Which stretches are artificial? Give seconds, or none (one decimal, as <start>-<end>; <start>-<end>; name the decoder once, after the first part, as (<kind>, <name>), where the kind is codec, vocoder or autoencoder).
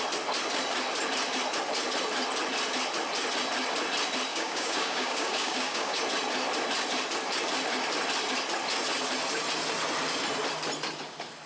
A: 4.3-6.0 (codec, DAC)